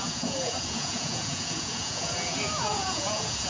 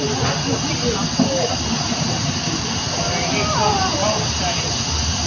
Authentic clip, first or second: second